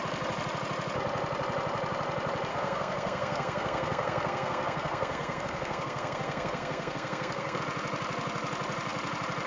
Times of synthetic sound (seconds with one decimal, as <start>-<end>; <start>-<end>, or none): 2.5-7.6